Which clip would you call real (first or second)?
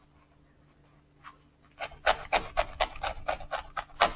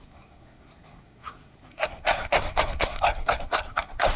first